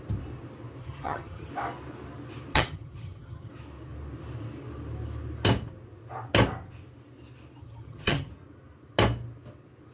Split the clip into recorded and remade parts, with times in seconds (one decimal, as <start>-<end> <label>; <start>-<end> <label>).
0.0-0.8 recorded; 0.8-1.5 remade; 1.5-2.5 recorded; 2.5-3.5 remade; 3.5-7.6 recorded; 7.6-8.3 remade; 8.3-9.9 recorded